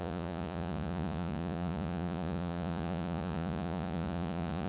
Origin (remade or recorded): remade